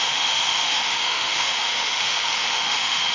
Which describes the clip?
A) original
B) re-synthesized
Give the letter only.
B